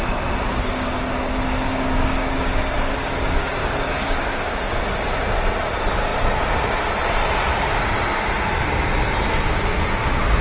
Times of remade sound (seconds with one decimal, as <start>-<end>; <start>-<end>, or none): 0.5-4.6